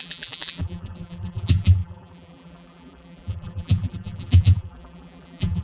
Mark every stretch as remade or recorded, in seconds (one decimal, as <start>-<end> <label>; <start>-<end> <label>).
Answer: 0.0-5.6 remade